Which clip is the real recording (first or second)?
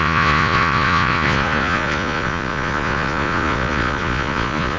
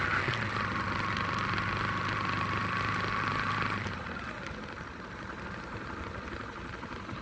second